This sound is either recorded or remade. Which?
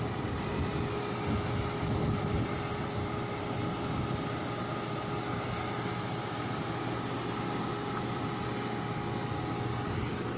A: recorded